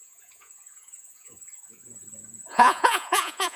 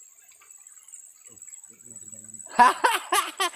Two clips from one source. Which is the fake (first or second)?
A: first